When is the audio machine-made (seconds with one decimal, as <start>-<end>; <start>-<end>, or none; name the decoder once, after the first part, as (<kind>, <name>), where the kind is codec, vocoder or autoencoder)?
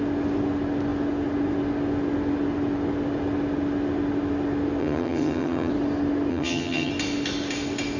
4.8-5.7 (vocoder, HiFi-GAN); 6.3-6.9